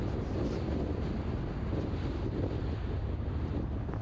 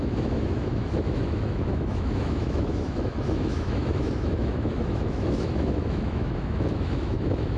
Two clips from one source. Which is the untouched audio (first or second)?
first